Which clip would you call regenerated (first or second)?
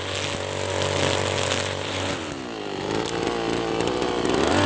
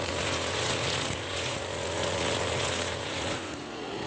second